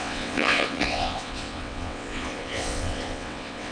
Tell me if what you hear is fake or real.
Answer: fake